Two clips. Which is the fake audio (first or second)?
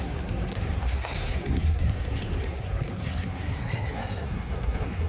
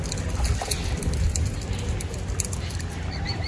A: first